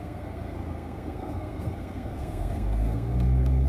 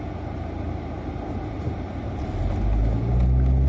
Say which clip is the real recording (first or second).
second